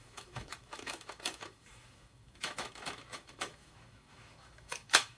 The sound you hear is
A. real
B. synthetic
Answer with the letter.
B